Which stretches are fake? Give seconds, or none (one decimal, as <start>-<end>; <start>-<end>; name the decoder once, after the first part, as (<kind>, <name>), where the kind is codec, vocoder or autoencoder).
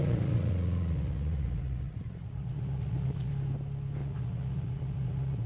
0.0-3.3 (vocoder, Vocos); 4.0-5.5